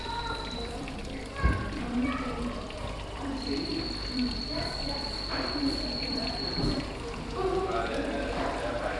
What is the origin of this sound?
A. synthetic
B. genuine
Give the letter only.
A